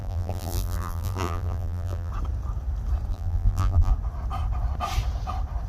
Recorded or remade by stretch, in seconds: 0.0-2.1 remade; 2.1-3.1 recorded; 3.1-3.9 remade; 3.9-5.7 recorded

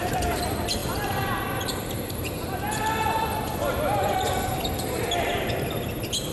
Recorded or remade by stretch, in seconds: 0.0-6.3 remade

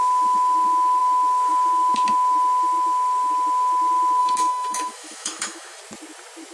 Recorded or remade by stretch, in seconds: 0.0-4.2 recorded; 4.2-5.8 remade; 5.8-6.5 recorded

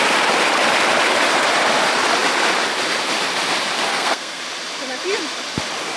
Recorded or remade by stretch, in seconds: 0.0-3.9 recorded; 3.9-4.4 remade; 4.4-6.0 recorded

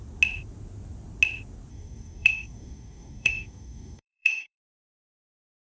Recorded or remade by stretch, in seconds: 0.0-1.7 recorded; 1.7-4.6 remade; 4.6-5.7 recorded